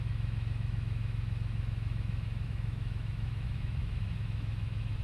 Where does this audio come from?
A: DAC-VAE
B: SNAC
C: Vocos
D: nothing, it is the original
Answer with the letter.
A